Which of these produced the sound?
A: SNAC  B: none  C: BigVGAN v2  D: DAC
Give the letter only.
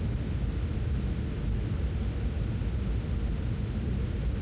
B